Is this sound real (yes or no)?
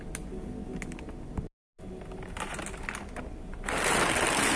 yes